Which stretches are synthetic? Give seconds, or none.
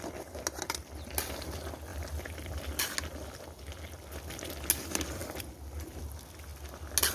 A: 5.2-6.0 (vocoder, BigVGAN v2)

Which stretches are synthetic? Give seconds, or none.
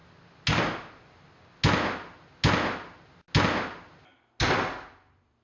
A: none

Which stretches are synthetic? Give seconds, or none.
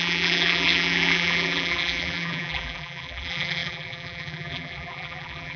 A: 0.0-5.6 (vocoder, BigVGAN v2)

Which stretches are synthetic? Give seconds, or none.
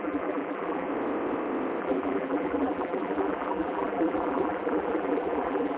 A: 0.0-0.9 (vocoder, BigVGAN v2); 1.8-5.8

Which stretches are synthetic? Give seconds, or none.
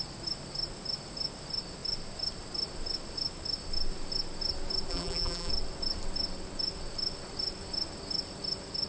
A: 4.9-5.5 (vocoder, BigVGAN v2)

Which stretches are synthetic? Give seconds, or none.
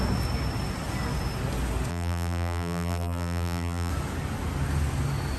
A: 1.9-3.9 (vocoder, BigVGAN v2)